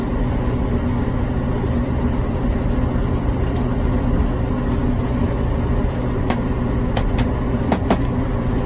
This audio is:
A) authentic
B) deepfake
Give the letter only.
A